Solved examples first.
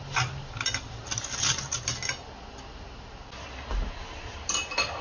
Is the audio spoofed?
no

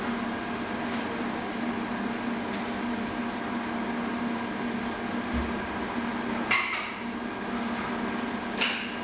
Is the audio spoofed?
no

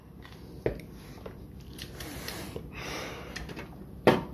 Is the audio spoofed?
no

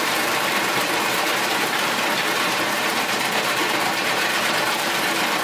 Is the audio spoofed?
yes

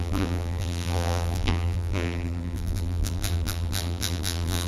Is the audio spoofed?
yes